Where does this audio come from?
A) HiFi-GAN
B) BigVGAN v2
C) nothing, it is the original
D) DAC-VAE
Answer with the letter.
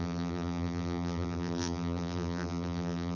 B